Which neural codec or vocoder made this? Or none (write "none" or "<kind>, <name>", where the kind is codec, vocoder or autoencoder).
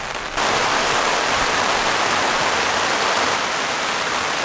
none